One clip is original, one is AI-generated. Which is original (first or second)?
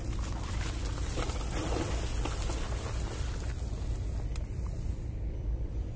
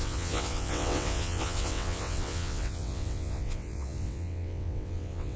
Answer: first